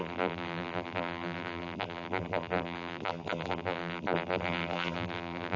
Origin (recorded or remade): remade